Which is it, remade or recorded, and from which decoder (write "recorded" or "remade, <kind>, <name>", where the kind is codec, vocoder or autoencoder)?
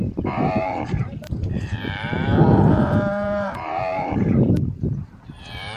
remade, vocoder, BigVGAN v2